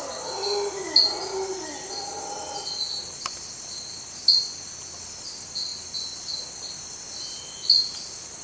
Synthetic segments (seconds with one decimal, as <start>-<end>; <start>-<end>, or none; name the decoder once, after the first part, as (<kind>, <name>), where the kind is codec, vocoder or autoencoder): none